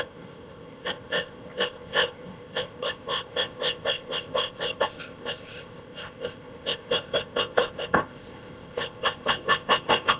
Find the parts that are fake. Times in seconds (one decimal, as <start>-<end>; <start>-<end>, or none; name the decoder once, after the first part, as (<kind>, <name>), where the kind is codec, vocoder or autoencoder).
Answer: 0.0-10.2 (codec, ZipCodec)